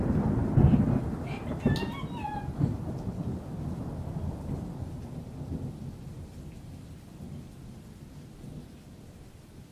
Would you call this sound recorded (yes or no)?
yes